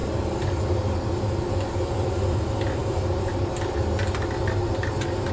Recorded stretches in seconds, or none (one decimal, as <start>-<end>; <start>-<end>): 0.0-5.3